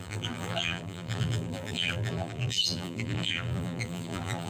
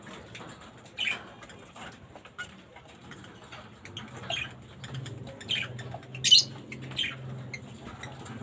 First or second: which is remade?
first